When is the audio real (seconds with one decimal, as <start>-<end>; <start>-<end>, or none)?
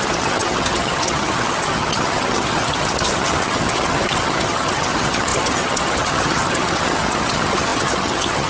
none